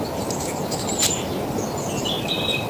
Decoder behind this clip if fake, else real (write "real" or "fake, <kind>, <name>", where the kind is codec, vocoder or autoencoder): real